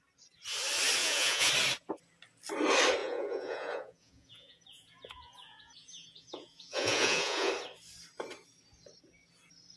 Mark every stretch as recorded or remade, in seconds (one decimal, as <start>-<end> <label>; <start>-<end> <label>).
0.0-1.0 recorded; 1.0-1.5 remade; 1.5-3.0 recorded; 3.0-7.5 remade; 7.5-9.8 recorded